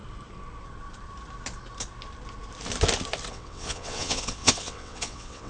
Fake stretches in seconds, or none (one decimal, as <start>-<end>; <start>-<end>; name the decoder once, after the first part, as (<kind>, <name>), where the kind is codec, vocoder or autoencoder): 3.3-5.5 (vocoder, WaveNeXt)